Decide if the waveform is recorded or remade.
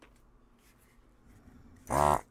recorded